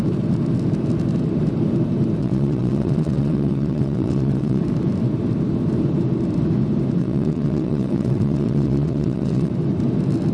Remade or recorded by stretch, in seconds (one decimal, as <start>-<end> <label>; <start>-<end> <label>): 0.0-2.2 recorded; 2.2-4.6 remade; 4.6-7.0 recorded; 7.0-9.5 remade; 9.5-10.3 recorded